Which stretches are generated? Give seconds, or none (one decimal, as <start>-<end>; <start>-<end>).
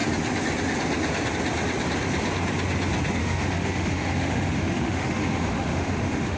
3.2-6.4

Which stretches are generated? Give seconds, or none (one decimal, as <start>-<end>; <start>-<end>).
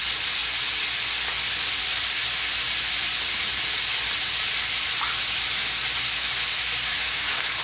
6.9-7.6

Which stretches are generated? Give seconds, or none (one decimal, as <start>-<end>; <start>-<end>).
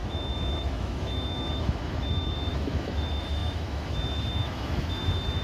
0.0-5.4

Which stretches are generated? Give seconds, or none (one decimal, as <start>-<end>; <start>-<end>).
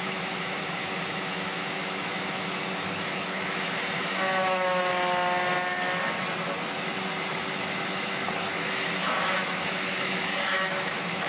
0.0-4.9; 7.5-11.3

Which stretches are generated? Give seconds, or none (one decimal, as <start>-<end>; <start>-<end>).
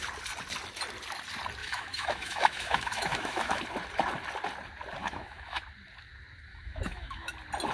1.6-3.6; 5.0-5.6; 6.5-7.3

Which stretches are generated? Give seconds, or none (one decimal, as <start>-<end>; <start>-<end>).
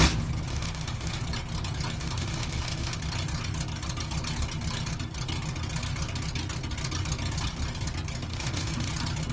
0.5-1.2; 2.0-3.0; 8.3-8.9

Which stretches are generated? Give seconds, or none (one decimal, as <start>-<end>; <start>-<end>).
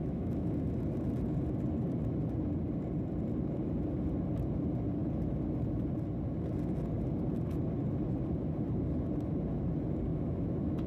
0.0-0.5; 10.1-10.9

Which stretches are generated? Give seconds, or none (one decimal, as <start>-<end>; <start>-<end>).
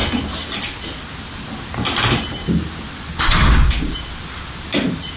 none